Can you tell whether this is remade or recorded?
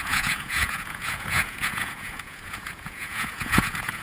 remade